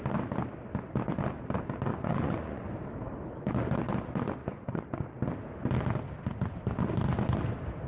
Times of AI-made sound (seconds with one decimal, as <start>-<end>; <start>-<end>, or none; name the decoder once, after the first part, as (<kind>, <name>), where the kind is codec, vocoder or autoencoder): 1.9-2.6 (vocoder, Vocos); 4.4-5.2